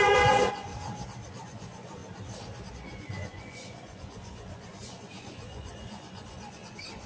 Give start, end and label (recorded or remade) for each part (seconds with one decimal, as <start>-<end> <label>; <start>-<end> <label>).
0.0-0.7 remade; 0.7-1.3 recorded; 1.3-2.0 remade; 2.0-2.7 recorded; 2.7-7.1 remade